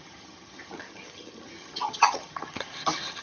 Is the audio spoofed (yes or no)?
yes